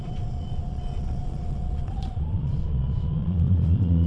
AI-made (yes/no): yes